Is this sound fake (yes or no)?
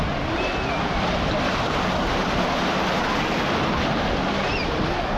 no